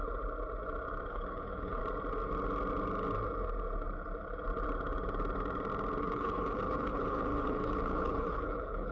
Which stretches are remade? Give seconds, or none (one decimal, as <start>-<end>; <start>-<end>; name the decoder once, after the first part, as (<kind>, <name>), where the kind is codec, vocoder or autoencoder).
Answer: 1.1-1.8 (codec, HILCodec); 6.0-8.9